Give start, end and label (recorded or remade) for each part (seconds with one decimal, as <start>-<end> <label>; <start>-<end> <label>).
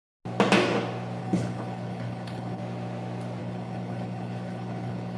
0.0-1.2 recorded; 1.2-2.6 remade; 2.6-3.4 recorded; 3.4-5.2 remade